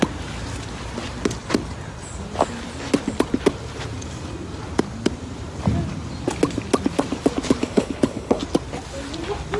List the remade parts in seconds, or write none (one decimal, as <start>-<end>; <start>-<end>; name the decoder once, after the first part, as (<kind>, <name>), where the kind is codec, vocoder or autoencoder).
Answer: 7.6-8.4 (codec, HILCodec)